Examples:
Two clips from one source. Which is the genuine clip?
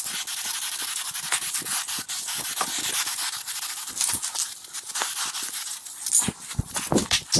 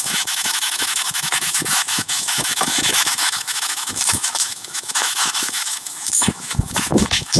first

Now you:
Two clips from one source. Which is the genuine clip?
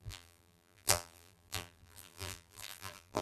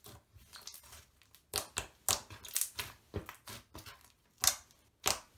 second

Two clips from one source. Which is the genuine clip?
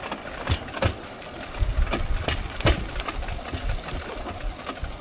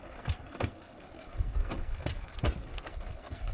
first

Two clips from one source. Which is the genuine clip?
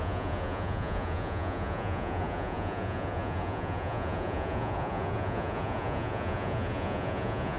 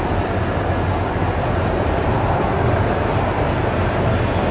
second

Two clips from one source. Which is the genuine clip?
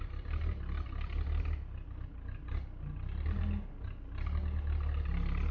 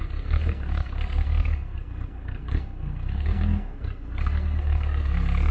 first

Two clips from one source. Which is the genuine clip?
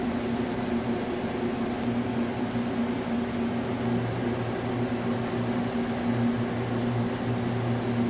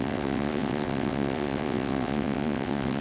first